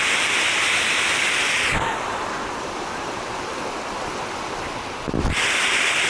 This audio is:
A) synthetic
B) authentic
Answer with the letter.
A